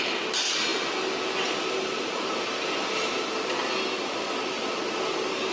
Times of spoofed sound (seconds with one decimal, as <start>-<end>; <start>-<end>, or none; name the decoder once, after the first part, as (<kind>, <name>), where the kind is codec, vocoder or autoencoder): none